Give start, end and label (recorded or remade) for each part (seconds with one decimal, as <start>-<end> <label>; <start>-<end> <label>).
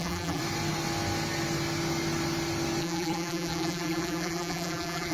0.0-0.4 remade; 0.4-2.8 recorded; 2.8-5.1 remade